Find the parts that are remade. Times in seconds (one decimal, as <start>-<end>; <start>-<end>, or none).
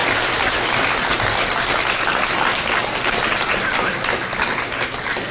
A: none